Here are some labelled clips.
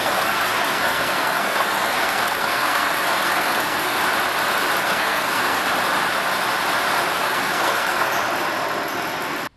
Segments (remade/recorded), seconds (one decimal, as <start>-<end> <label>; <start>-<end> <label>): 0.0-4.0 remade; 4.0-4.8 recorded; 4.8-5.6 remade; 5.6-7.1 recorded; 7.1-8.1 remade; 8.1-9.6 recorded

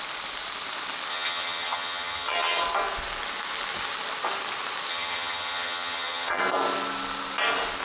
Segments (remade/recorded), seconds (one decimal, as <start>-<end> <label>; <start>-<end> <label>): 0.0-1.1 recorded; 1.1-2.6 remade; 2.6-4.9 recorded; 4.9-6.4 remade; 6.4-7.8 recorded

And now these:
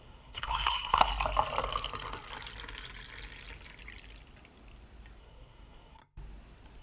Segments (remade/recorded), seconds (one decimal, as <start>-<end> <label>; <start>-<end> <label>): 0.0-1.1 remade; 1.1-5.2 recorded; 5.2-6.0 remade; 6.0-6.8 recorded

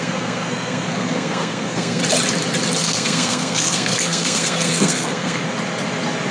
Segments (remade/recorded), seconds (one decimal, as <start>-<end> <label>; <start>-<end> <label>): 0.0-2.0 remade; 2.0-2.8 recorded; 2.8-5.4 remade; 5.4-6.3 recorded

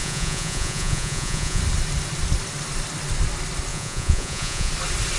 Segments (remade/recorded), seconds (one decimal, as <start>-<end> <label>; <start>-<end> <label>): 0.0-1.6 remade; 1.6-3.7 recorded; 3.7-4.7 remade; 4.7-5.2 recorded

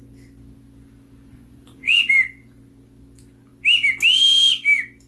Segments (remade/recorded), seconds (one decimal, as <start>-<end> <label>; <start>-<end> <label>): 0.0-1.3 recorded; 1.3-2.1 remade; 2.1-5.1 recorded